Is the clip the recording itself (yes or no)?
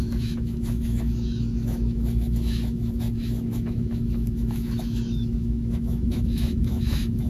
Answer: no